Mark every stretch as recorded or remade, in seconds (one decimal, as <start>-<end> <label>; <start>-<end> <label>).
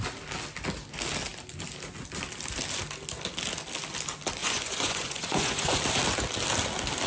0.0-4.4 recorded; 4.4-5.8 remade; 5.8-7.1 recorded